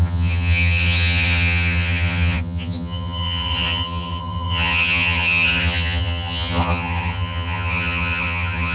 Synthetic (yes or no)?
yes